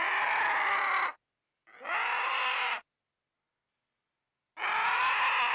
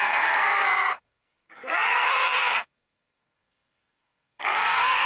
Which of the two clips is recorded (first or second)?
first